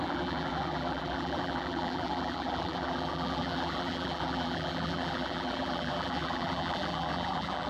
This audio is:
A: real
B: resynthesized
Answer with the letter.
B